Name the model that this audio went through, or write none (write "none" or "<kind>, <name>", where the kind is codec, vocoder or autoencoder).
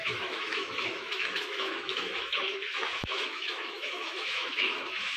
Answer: autoencoder, DAC-VAE